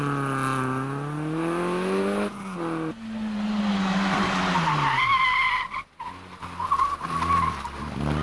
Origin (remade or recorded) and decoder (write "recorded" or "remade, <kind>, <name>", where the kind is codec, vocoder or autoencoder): recorded